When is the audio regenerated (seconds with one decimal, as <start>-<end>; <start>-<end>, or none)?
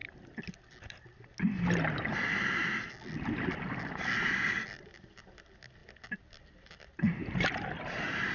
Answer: none